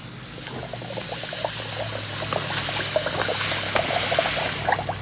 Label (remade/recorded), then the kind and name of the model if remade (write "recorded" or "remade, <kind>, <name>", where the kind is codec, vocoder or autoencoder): recorded